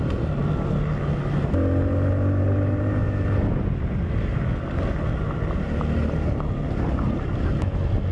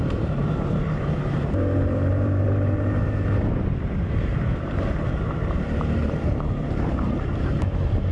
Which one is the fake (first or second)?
second